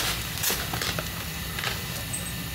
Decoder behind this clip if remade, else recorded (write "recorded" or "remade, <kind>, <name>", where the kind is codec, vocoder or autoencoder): recorded